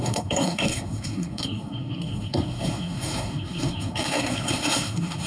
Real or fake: fake